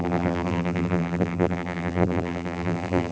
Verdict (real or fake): fake